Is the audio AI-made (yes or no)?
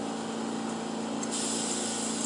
no